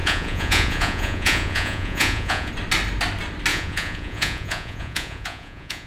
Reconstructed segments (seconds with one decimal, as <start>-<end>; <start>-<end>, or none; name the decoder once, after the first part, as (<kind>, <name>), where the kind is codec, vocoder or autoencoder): 0.0-2.5 (vocoder, Vocos); 3.5-5.9